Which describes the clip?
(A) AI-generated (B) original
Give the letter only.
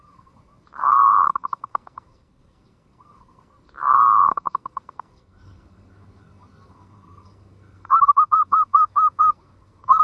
A